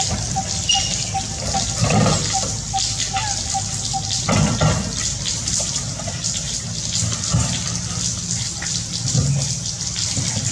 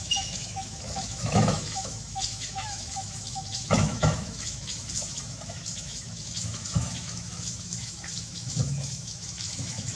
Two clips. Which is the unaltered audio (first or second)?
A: first